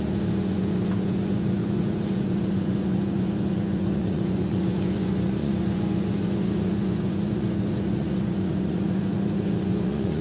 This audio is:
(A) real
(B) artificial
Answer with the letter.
B